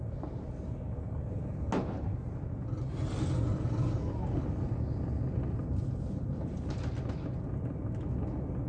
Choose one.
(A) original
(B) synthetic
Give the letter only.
A